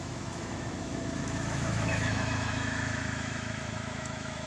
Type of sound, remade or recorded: remade